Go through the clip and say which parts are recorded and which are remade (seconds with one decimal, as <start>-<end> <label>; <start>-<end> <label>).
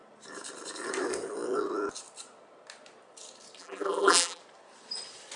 0.0-3.6 recorded; 3.6-4.4 remade; 4.4-5.4 recorded